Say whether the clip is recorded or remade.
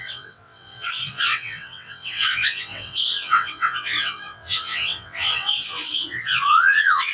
remade